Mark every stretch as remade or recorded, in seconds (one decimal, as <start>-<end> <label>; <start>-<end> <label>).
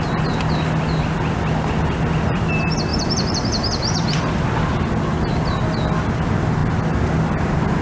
0.0-2.9 recorded; 2.9-4.8 remade; 4.8-7.8 recorded